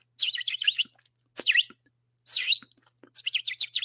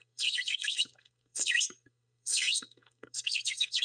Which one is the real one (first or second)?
first